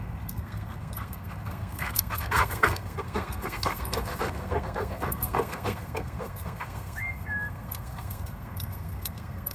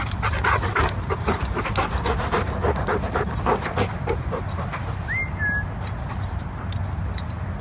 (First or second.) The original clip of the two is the second